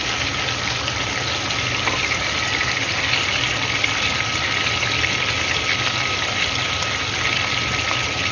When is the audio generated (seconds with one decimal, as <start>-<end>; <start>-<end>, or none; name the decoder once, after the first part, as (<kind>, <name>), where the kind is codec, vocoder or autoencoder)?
none